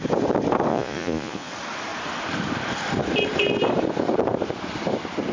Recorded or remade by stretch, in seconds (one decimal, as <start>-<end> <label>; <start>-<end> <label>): 0.0-0.7 recorded; 0.7-1.5 remade; 1.5-5.3 recorded